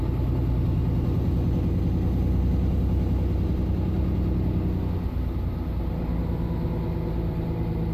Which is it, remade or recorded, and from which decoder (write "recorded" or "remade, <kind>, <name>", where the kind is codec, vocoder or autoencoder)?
recorded